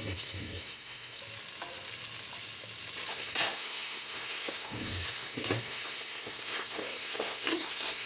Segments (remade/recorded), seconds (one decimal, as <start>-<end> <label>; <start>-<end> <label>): 0.0-1.2 remade; 1.2-3.1 recorded; 3.1-8.1 remade